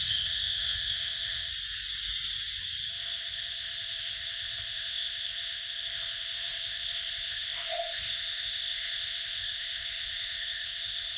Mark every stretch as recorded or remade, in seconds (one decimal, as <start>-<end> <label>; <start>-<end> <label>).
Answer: 0.0-1.5 remade; 1.5-2.9 recorded; 2.9-11.2 remade